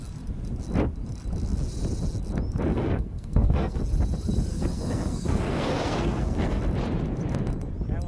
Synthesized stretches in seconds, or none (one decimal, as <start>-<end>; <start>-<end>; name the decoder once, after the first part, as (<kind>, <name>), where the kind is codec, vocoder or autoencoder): 2.7-3.8 (codec, SNAC); 4.5-6.6